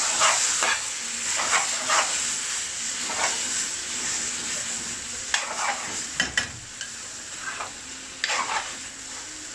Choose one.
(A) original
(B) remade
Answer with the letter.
A